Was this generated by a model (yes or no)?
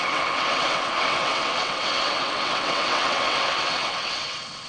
yes